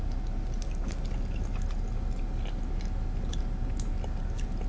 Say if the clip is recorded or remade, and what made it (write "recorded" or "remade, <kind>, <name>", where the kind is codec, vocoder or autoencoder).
recorded